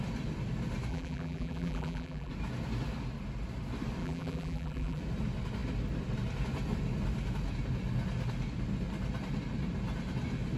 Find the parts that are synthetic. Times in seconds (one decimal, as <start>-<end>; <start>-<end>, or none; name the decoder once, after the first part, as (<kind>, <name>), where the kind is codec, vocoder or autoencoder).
0.9-2.3 (vocoder, BigVGAN v2); 4.0-5.0